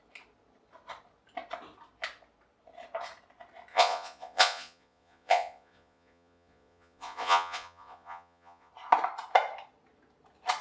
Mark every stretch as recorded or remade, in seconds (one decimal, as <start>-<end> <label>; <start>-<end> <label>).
0.0-3.7 recorded; 3.7-8.7 remade; 8.7-10.6 recorded